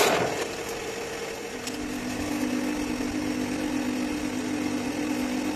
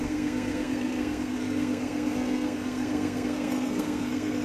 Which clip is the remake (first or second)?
second